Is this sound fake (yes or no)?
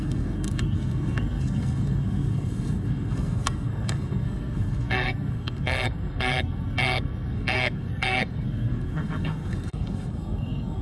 yes